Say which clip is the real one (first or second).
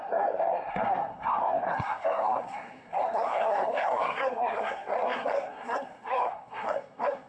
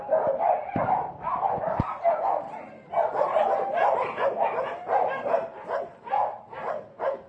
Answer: second